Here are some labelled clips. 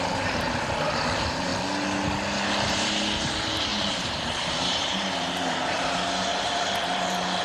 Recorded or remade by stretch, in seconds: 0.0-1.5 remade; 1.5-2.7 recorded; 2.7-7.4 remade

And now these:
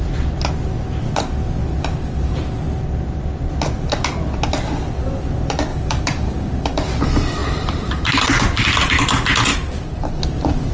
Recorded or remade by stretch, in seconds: 0.0-1.6 recorded; 1.6-2.4 remade; 2.4-5.7 recorded; 5.7-7.0 remade; 7.0-7.4 recorded; 7.4-8.6 remade; 8.6-9.5 recorded; 9.5-10.2 remade; 10.2-10.7 recorded